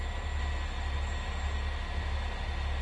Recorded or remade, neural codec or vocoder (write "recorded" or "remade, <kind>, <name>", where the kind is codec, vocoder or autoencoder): recorded